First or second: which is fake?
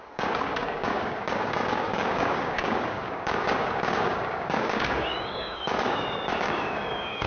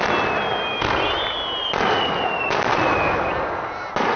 first